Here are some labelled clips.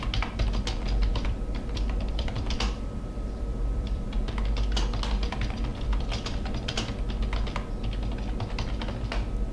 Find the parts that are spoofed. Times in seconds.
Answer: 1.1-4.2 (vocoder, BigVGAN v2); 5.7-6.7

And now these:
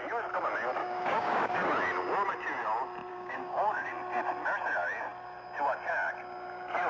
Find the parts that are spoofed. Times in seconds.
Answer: 0.8-1.7 (codec, DAC); 3.1-3.9

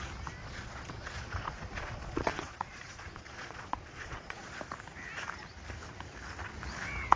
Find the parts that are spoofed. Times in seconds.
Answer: 0.4-4.6 (vocoder, Vocos)